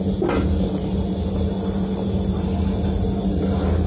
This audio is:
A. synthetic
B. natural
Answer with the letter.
B